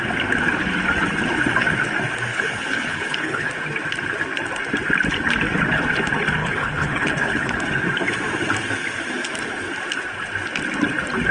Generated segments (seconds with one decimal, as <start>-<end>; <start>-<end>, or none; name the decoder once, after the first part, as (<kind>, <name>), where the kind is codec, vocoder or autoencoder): 2.3-3.5 (codec, HILCodec); 6.4-7.6